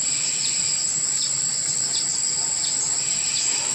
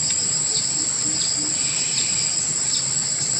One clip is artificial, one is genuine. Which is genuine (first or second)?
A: first